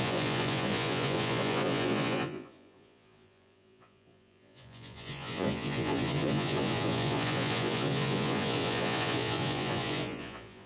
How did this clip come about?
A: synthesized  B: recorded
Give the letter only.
A